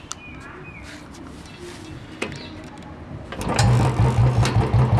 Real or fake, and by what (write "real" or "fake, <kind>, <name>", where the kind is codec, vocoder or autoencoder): real